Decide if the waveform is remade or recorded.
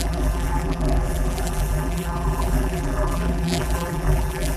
remade